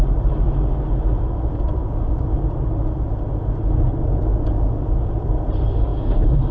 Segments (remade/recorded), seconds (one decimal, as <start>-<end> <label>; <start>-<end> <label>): 0.0-1.8 remade; 1.8-4.0 recorded; 4.0-5.9 remade; 5.9-6.5 recorded